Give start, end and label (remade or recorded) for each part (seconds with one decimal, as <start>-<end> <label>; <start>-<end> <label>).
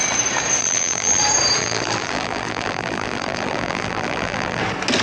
0.0-0.6 recorded; 0.6-1.2 remade; 1.2-1.6 recorded; 1.6-4.6 remade; 4.6-5.0 recorded